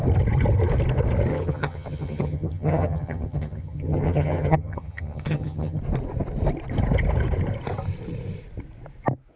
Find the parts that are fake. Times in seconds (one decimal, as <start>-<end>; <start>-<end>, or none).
1.3-5.8